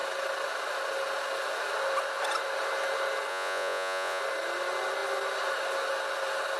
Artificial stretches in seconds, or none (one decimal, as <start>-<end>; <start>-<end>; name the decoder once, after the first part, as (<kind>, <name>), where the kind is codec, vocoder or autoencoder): 3.3-4.2 (vocoder, Vocos)